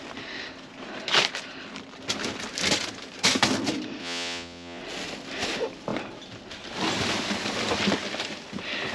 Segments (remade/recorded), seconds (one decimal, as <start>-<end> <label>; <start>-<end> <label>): 0.0-4.0 recorded; 4.0-4.8 remade; 4.8-8.9 recorded